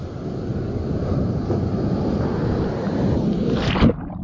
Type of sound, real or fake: real